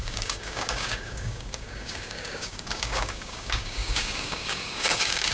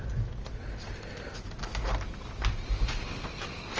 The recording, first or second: second